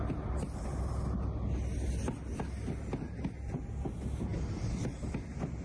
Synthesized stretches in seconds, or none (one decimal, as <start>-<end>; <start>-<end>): none